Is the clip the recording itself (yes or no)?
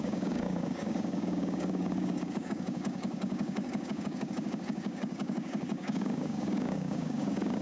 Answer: no